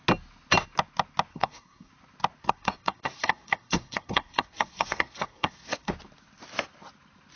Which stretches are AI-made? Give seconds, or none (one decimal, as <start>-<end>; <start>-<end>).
1.3-1.9; 2.4-5.9